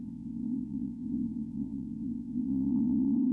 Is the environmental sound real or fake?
fake